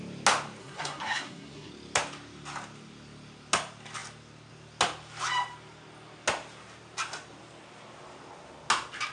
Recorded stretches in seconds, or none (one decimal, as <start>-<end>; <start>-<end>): 0.0-0.6; 1.7-9.1

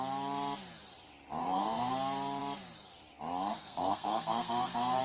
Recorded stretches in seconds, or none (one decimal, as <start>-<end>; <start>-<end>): 0.0-1.4; 1.9-3.5

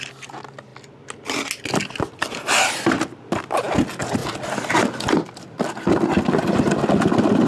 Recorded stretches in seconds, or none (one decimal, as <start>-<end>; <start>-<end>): 0.0-7.5